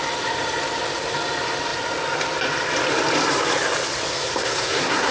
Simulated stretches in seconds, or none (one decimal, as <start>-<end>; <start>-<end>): 4.1-5.1